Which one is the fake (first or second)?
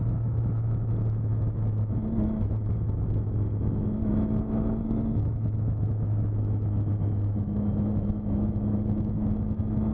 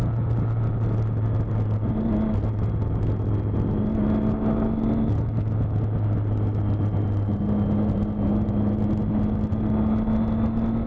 first